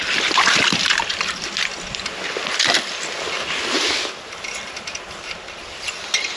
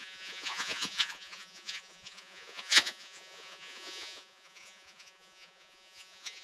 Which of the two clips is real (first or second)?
first